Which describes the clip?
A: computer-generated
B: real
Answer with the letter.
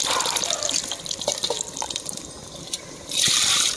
A